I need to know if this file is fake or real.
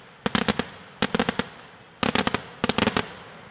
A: real